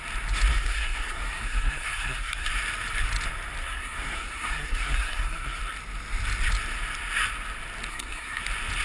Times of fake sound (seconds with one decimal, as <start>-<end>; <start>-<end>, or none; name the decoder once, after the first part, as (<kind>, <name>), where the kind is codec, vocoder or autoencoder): 0.5-2.5 (codec, SNAC); 3.6-5.6; 7.9-8.4